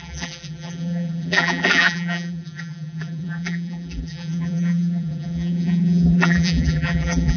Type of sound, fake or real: fake